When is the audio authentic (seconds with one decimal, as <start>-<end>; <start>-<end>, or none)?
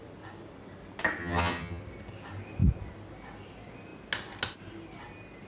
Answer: 0.0-1.2; 1.8-5.5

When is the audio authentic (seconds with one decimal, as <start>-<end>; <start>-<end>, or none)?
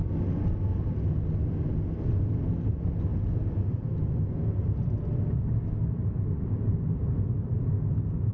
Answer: 0.0-8.3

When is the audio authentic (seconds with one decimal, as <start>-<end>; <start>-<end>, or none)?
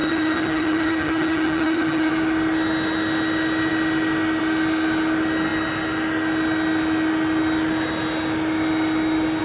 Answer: 2.1-9.4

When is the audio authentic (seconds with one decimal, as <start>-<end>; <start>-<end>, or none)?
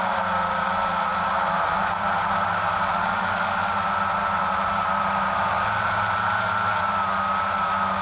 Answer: 0.0-8.0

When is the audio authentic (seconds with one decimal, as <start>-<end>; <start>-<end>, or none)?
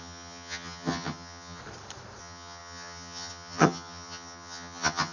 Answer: 1.6-2.2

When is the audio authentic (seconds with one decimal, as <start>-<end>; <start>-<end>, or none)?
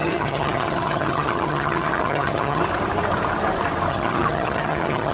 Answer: 2.6-3.9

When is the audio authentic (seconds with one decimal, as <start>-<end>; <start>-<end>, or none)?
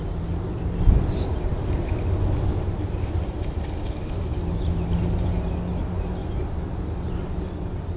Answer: 0.0-8.0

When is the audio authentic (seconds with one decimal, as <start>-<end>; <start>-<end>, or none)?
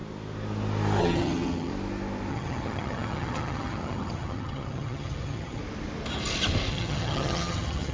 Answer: 0.0-1.0; 1.7-2.3; 5.6-6.7